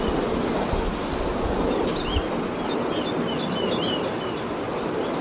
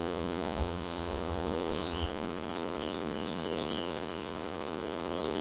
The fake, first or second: second